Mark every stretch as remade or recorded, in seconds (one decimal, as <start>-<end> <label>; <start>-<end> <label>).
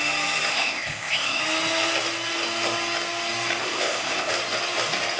0.0-0.5 recorded; 0.5-1.4 remade; 1.4-3.6 recorded; 3.6-4.3 remade; 4.3-5.2 recorded